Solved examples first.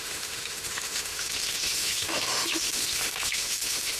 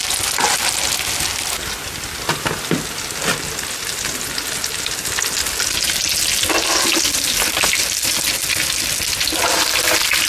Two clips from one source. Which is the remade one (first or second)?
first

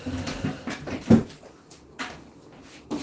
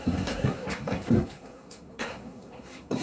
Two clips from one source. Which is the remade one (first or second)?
second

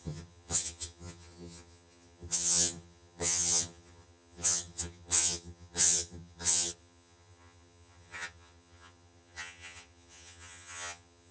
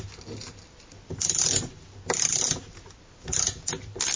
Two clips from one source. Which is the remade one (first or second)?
first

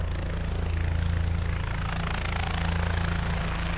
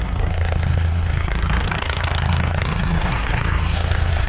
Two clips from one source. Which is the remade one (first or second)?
second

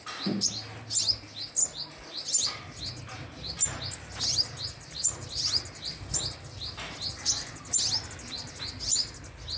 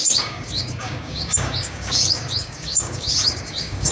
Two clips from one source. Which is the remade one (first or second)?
second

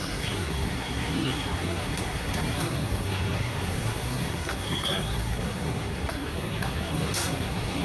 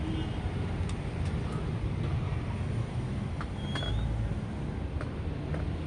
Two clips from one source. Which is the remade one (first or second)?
first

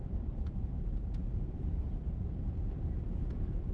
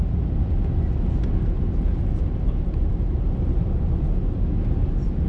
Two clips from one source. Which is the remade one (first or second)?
first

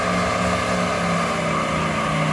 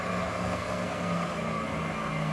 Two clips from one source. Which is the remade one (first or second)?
second